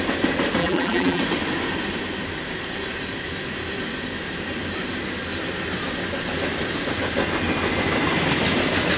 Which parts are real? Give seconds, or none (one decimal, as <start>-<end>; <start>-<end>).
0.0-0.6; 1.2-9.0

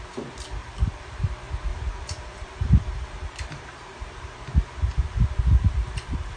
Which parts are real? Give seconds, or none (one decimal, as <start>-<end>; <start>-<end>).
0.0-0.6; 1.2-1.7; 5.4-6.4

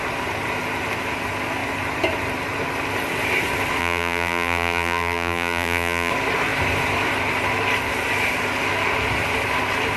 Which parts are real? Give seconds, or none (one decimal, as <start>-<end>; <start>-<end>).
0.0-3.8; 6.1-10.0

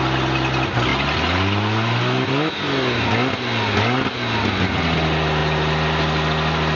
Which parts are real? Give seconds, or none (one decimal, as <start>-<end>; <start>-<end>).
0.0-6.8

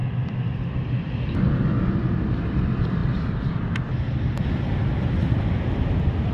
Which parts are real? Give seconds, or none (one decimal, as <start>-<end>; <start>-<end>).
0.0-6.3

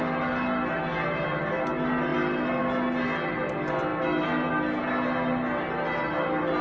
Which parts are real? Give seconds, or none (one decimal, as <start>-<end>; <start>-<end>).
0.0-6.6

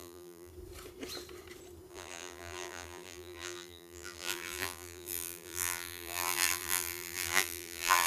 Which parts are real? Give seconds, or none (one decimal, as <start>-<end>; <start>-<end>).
0.5-1.9

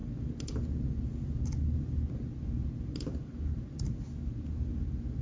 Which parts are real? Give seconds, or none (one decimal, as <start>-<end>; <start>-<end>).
0.0-5.2